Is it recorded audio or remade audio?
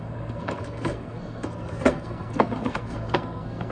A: remade